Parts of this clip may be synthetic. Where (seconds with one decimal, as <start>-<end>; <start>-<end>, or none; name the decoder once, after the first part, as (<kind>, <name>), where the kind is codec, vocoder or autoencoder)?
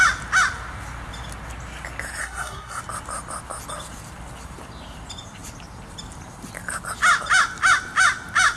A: 2.2-2.8 (codec, SNAC)